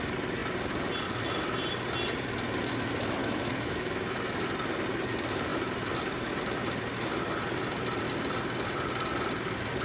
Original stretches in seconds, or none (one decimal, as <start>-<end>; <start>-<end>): 0.0-3.2; 4.2-9.8